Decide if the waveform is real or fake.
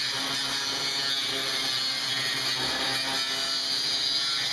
real